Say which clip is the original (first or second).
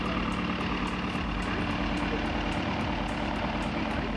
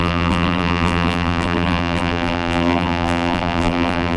first